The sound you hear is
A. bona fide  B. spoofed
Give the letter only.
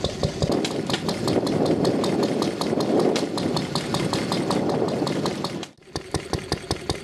A